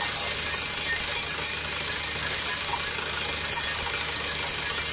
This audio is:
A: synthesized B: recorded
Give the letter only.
B